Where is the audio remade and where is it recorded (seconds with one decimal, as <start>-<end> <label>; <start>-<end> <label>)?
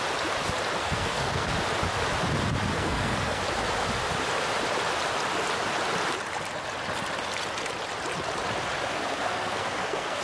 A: 0.0-0.8 recorded; 0.8-1.5 remade; 1.5-2.7 recorded; 2.7-3.4 remade; 3.4-8.9 recorded; 8.9-10.2 remade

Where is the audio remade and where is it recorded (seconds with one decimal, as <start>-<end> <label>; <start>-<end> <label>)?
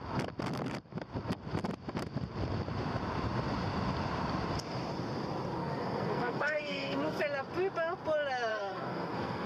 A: 0.0-5.6 recorded; 5.6-7.2 remade; 7.2-8.5 recorded; 8.5-9.5 remade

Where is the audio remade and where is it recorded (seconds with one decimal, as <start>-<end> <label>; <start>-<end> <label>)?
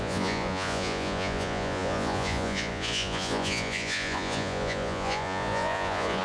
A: 0.0-6.2 remade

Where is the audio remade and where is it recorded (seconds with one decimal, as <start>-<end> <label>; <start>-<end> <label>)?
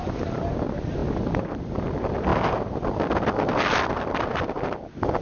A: 0.0-5.2 recorded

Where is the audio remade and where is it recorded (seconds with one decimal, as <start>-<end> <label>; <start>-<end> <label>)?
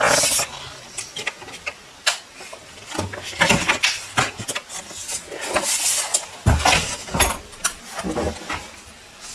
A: 0.0-9.3 recorded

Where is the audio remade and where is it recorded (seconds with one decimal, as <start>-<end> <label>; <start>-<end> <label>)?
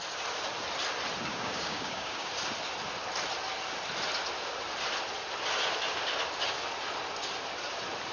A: 0.0-1.3 recorded; 1.3-2.3 remade; 2.3-8.1 recorded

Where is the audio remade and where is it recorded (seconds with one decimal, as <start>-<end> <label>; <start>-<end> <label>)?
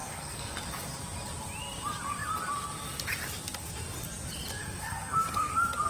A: 0.0-0.6 remade; 0.6-4.6 recorded; 4.6-5.5 remade; 5.5-5.9 recorded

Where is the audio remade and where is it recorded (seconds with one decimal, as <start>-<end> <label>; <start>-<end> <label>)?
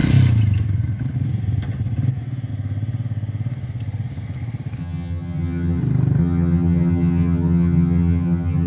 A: 0.0-4.8 recorded; 4.8-5.8 remade; 5.8-6.2 recorded; 6.2-8.7 remade